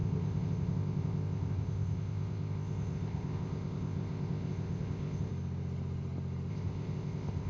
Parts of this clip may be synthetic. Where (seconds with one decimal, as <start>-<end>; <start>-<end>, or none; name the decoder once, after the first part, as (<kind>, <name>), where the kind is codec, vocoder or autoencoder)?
0.0-5.3 (codec, ZipCodec); 6.5-7.5